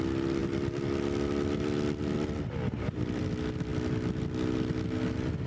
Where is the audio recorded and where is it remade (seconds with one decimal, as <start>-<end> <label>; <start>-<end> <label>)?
0.0-0.4 recorded; 0.4-3.2 remade; 3.2-5.5 recorded